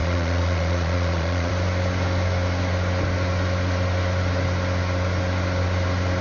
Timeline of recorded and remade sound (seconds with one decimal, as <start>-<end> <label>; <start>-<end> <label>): 0.0-1.5 remade; 1.5-6.2 recorded